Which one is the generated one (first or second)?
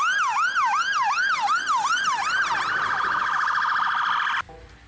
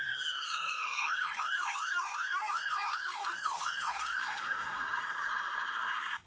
second